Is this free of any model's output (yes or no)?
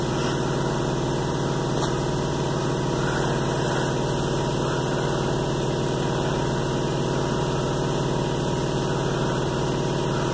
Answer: yes